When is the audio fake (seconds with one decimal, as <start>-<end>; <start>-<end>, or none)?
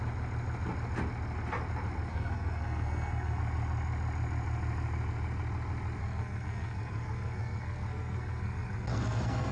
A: 2.1-3.4; 6.0-9.5